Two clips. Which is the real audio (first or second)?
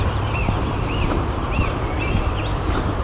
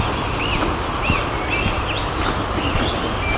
second